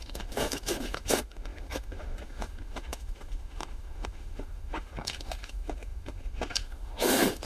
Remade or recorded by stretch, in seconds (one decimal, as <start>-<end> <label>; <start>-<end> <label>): 0.0-7.4 remade